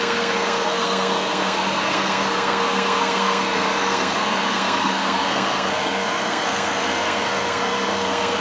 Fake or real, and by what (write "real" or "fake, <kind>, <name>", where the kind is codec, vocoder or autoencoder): fake, codec, SNAC